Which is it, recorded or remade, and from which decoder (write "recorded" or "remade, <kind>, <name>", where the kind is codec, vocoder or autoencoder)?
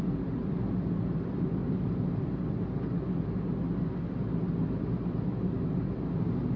recorded